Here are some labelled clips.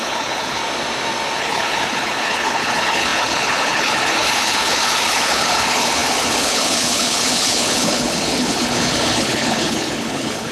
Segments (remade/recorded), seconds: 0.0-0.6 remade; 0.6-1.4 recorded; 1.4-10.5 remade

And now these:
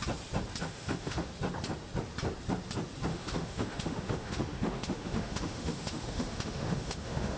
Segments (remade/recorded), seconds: 0.0-0.6 recorded; 0.6-1.3 remade; 1.3-3.1 recorded; 3.1-7.4 remade

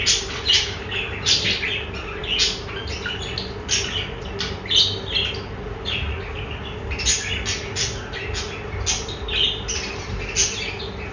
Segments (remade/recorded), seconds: 0.0-11.1 recorded

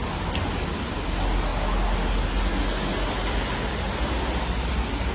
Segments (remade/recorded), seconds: 0.0-5.1 recorded

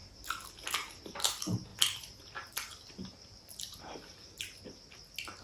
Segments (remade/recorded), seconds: 0.0-1.7 recorded; 1.7-3.8 remade; 3.8-5.4 recorded

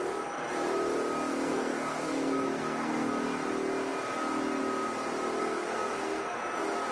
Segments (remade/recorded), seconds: 0.0-1.3 recorded; 1.3-3.1 remade; 3.1-5.4 recorded; 5.4-6.4 remade; 6.4-6.9 recorded

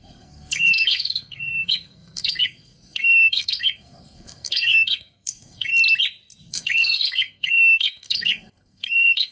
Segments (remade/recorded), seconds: 0.0-5.7 remade; 5.7-6.5 recorded; 6.5-9.3 remade

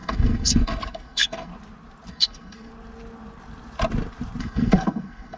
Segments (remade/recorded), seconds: 0.0-1.5 remade; 1.5-2.1 recorded; 2.1-2.7 remade; 2.7-4.4 recorded; 4.4-5.4 remade